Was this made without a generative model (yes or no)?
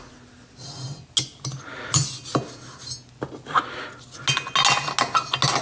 yes